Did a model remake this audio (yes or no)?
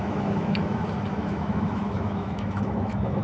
yes